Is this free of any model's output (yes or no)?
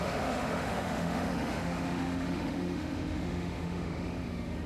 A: no